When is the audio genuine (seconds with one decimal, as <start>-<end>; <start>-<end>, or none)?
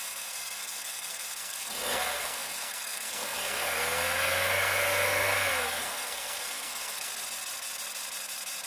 7.1-8.7